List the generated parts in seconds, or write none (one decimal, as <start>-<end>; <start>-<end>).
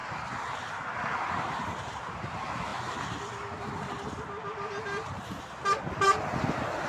0.7-2.7